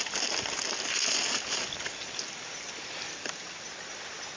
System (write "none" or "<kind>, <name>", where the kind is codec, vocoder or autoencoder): none